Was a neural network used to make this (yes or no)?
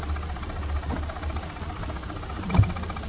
no